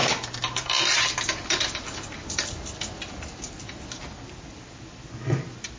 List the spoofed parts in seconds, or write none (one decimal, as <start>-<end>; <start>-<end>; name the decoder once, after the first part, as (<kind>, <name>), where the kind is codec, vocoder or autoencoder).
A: none